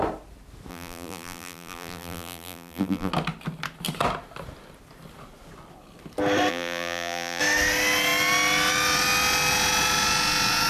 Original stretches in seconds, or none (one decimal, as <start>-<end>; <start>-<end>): 0.0-0.7; 3.1-6.5; 7.4-10.7